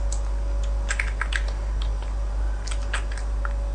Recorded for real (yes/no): yes